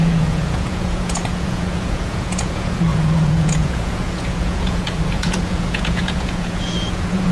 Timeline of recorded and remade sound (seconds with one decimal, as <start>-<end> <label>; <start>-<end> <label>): 0.0-7.3 remade